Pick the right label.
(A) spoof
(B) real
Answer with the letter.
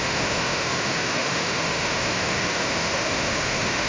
A